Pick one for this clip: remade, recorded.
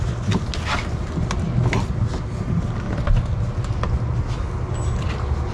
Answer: recorded